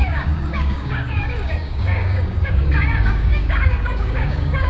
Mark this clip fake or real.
fake